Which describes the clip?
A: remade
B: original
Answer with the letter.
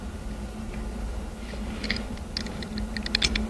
B